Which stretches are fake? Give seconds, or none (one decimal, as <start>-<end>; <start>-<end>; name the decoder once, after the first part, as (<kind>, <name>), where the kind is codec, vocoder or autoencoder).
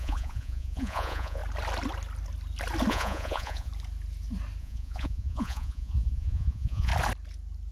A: 0.0-1.4 (vocoder, Vocos); 2.9-3.7; 4.6-6.9